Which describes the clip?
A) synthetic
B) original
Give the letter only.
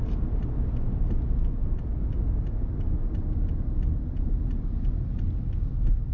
B